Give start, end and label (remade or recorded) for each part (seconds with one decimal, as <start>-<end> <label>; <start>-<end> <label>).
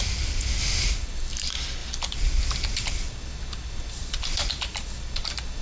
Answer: 0.0-1.8 recorded; 1.8-5.6 remade